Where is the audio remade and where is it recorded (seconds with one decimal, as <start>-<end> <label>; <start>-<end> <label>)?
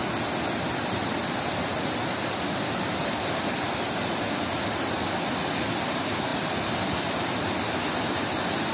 0.0-8.7 recorded